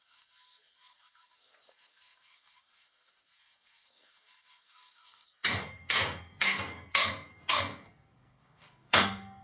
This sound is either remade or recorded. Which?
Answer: remade